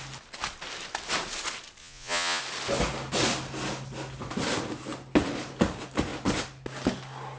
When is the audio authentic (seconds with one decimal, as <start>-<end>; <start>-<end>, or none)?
0.0-1.8; 2.4-7.4

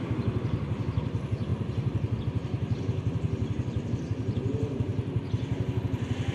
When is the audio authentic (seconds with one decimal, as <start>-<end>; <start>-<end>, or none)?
0.0-6.3

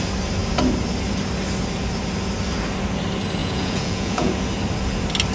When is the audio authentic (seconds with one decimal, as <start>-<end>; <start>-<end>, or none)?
0.0-3.4; 4.3-5.3

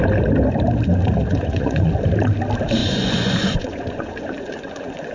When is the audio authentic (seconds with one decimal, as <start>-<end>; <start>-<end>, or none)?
0.0-1.3; 1.9-2.8

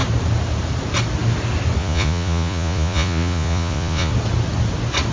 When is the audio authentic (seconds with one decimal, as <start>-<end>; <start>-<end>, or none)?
0.0-1.8; 4.1-5.1

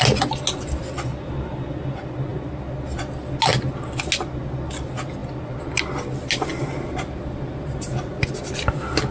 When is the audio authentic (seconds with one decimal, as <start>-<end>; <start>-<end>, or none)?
0.0-9.1

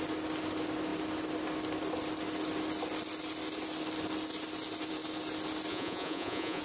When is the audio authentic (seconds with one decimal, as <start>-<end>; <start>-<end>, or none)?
0.0-5.7

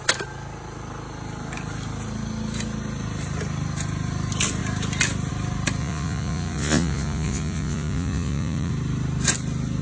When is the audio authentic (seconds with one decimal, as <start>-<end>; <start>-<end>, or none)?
0.0-5.8; 8.7-9.8